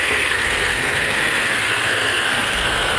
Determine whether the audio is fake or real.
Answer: fake